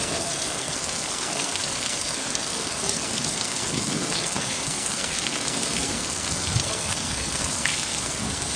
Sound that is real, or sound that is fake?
fake